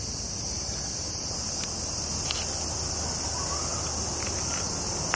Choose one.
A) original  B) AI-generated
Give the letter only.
A